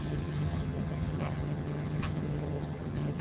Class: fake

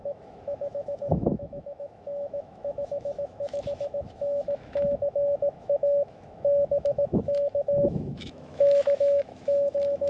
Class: fake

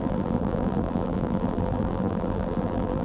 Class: fake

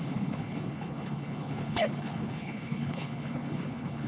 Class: fake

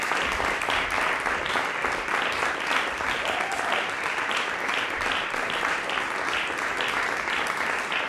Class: real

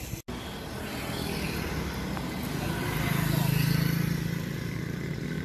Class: real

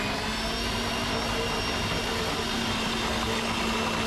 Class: real